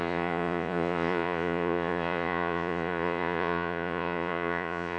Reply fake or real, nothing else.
fake